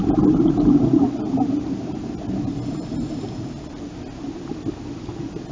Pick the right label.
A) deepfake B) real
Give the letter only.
B